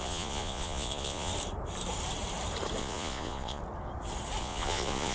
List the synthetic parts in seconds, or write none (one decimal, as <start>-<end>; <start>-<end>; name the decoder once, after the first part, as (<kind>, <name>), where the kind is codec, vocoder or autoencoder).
0.0-1.3 (vocoder, Vocos); 2.8-3.6; 4.4-5.1